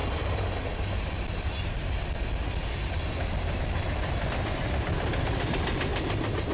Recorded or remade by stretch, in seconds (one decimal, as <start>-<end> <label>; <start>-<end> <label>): 0.0-6.5 recorded